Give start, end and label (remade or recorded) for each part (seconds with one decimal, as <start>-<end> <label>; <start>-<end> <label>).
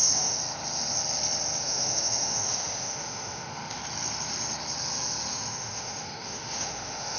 0.0-0.4 remade; 0.4-1.6 recorded; 1.6-3.8 remade; 3.8-5.3 recorded; 5.3-7.2 remade